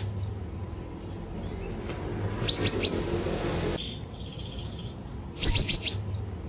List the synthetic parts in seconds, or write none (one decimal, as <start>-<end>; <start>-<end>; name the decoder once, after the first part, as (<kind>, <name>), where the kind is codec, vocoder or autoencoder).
none